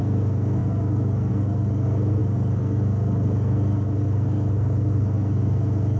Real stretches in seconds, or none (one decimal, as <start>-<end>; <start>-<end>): none